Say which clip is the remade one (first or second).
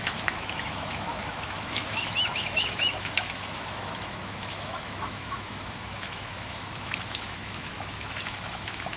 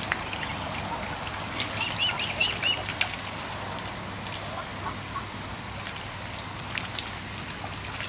first